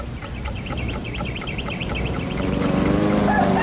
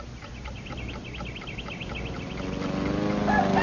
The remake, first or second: first